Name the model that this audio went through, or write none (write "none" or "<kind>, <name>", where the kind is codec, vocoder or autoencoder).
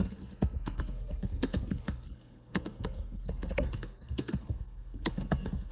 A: codec, SNAC